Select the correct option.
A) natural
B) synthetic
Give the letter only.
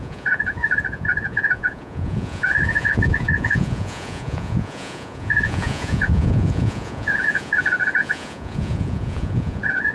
B